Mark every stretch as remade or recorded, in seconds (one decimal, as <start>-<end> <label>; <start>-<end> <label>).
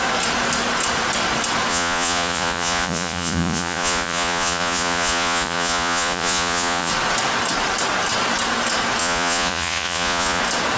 0.0-1.7 recorded; 1.7-6.9 remade; 6.9-9.0 recorded; 9.0-10.4 remade; 10.4-10.8 recorded